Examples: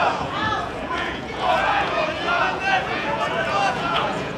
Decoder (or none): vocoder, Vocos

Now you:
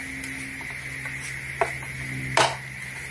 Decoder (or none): none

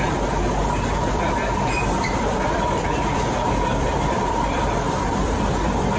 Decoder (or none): vocoder, BigVGAN v2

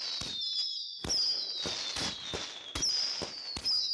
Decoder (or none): none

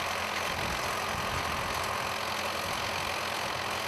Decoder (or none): none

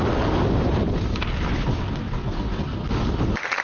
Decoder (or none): none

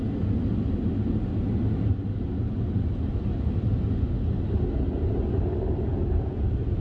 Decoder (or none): none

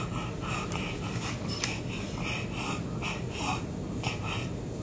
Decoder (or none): none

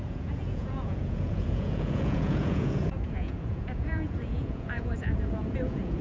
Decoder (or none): vocoder, Vocos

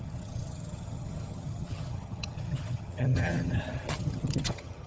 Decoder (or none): vocoder, HiFi-GAN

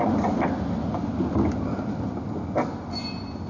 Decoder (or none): none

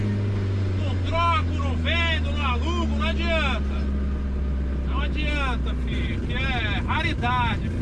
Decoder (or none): none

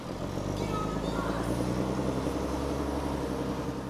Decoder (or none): none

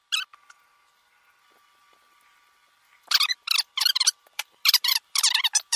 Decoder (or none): vocoder, BigVGAN v2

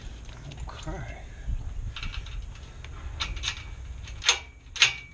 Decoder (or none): none